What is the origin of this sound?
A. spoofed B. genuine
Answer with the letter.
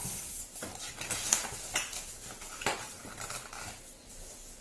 B